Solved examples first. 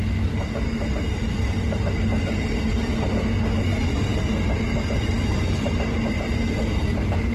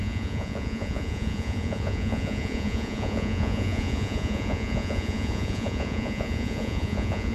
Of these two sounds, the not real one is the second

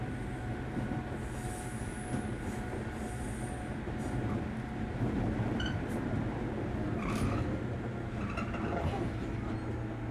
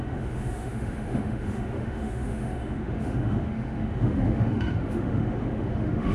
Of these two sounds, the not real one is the second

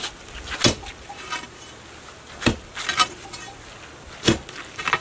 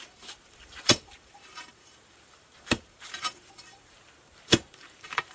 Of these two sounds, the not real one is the second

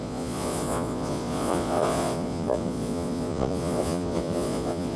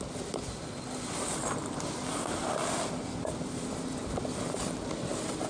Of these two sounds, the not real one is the first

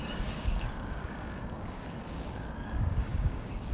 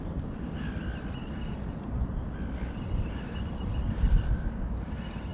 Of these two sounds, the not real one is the first